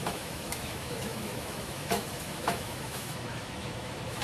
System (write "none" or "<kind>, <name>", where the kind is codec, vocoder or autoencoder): autoencoder, DAC-VAE